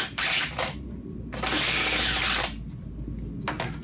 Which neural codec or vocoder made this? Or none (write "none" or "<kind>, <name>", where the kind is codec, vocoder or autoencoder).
none